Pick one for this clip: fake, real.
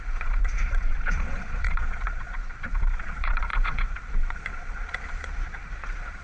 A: fake